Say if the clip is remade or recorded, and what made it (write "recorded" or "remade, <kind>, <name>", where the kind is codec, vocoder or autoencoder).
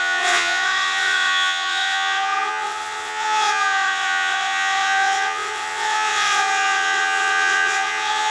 remade, vocoder, WaveNeXt